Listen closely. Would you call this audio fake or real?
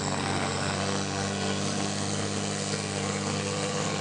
fake